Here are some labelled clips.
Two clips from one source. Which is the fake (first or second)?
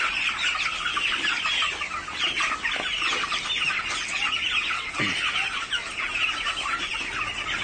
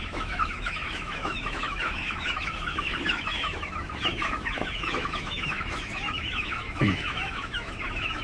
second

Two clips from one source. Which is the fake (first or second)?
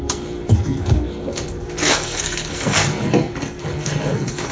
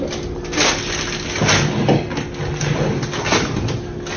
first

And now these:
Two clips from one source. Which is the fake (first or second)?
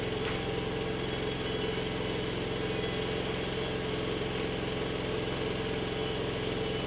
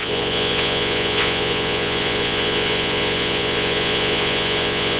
second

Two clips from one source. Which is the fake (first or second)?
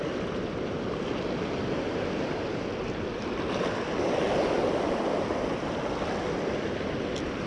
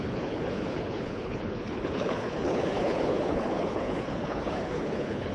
second